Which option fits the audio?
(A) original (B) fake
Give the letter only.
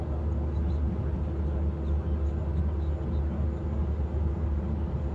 A